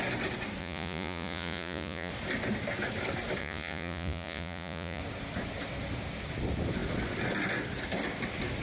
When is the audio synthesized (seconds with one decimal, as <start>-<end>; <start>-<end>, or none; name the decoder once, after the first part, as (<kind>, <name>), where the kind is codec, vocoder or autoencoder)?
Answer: 0.6-2.1 (vocoder, Vocos); 3.4-5.0